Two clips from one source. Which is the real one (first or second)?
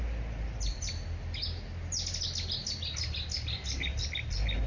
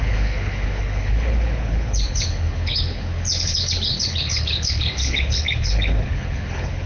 first